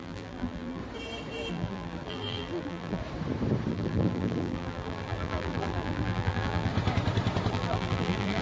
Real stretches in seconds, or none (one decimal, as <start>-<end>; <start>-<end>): 0.8-1.5; 3.0-3.7; 6.7-7.5